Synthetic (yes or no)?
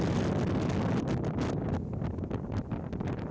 no